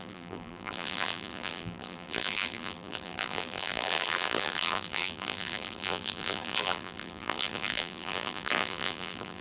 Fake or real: fake